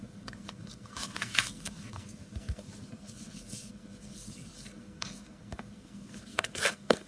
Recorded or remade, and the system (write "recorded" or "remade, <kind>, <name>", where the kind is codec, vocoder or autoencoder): remade, codec, SNAC